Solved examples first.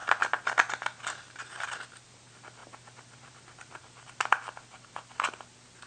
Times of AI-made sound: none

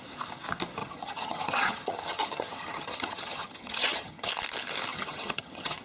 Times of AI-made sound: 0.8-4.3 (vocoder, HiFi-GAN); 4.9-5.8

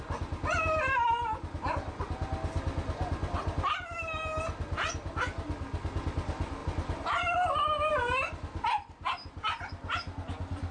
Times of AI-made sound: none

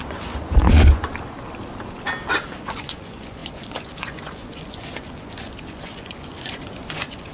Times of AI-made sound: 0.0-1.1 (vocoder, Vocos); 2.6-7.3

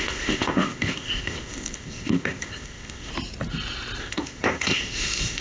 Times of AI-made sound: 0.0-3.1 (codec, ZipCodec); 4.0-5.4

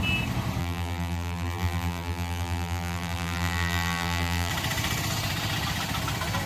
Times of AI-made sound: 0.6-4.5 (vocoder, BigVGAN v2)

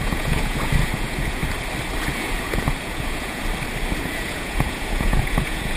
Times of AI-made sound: 0.0-1.4 (vocoder, Vocos); 2.0-3.4; 4.0-5.8